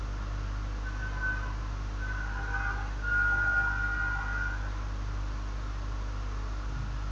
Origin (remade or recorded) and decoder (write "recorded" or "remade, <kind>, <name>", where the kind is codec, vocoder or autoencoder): recorded